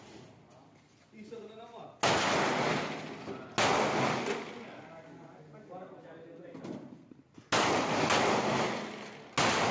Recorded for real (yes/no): yes